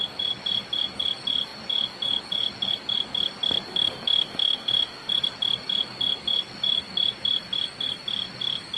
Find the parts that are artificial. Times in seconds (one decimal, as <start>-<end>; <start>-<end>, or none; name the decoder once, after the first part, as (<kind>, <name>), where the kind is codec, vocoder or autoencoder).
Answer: 3.7-5.1 (autoencoder, DAC-VAE)